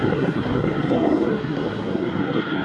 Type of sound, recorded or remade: remade